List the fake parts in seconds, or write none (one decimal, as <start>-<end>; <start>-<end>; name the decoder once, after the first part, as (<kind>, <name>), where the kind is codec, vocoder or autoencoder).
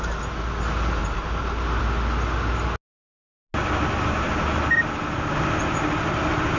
1.0-1.8 (vocoder, BigVGAN v2)